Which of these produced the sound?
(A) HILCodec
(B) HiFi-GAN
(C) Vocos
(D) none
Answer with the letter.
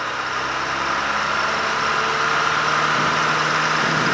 D